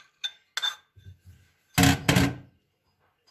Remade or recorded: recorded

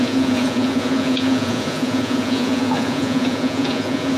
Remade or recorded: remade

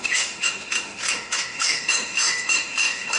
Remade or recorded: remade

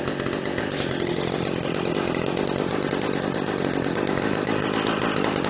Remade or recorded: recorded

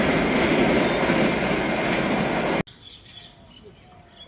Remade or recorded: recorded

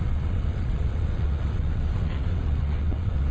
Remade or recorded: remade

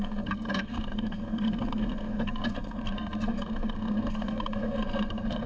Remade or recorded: remade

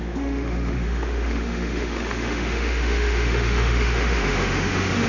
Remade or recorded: remade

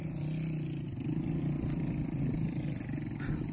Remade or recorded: recorded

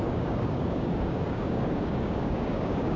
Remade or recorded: remade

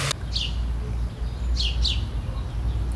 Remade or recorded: recorded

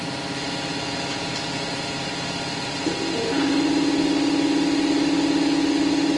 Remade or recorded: recorded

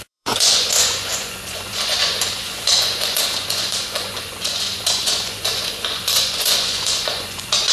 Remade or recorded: remade